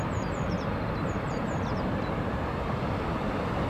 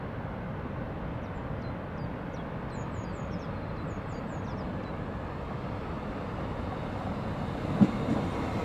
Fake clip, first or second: first